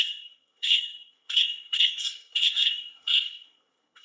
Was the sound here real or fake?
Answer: fake